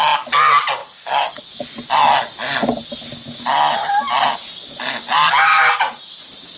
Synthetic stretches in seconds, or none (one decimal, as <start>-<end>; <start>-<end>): 0.8-1.4